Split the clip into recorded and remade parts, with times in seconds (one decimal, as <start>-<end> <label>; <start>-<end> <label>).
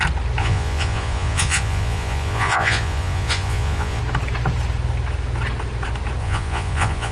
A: 0.0-0.4 recorded; 0.4-4.0 remade; 4.0-6.2 recorded; 6.2-7.1 remade